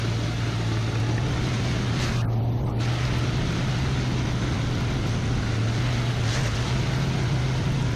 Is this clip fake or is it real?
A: real